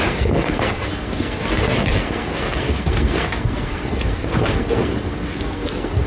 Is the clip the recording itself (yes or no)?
no